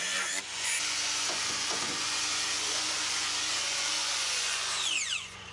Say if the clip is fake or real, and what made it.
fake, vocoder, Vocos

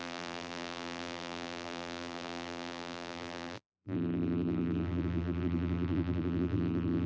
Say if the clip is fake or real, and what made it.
fake, vocoder, BigVGAN v2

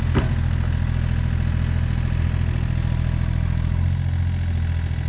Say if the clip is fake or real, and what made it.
real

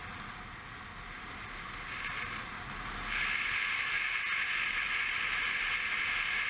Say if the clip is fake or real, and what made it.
real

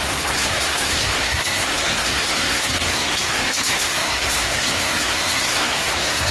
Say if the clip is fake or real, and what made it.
fake, codec, SNAC